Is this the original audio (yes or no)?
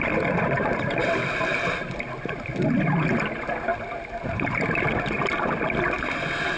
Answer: yes